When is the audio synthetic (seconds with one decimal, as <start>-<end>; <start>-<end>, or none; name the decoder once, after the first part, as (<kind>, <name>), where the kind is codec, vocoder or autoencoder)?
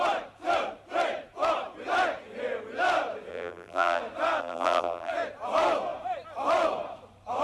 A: 3.3-4.0 (vocoder, BigVGAN v2); 4.4-5.1